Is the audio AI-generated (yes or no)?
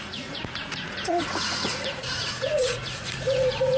yes